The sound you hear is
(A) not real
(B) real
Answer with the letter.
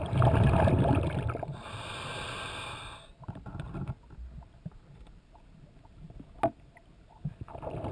B